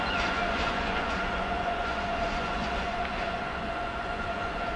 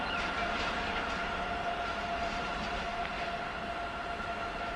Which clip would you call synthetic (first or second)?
first